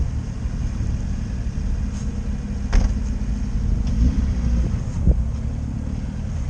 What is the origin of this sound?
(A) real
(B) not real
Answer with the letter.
A